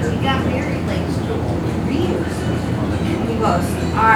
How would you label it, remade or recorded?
recorded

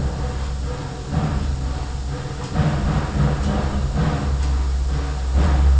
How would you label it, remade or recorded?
recorded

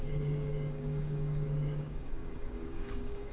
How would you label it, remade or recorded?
remade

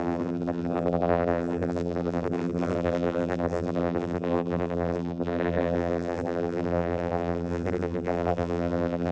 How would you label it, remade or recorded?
remade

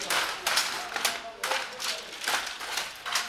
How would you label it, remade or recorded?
recorded